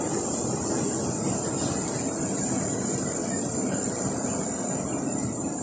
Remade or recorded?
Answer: recorded